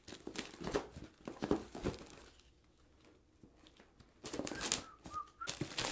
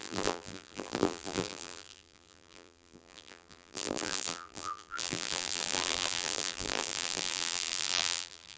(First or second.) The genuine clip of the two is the first